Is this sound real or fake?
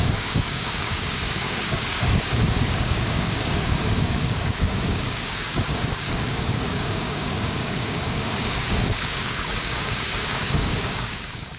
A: fake